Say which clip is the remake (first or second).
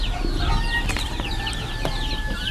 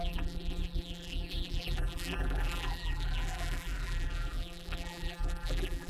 second